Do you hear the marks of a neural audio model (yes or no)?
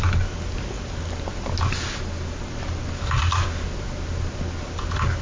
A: no